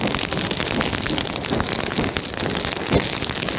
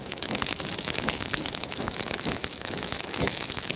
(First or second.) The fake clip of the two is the second